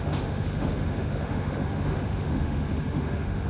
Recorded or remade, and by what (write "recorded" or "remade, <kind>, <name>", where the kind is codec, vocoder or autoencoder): remade, autoencoder, DAC-VAE